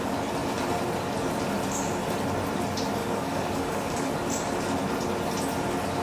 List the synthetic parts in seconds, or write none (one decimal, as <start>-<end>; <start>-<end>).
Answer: 3.0-4.1